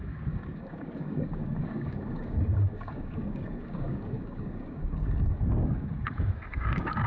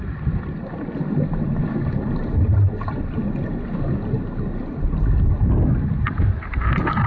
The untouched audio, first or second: second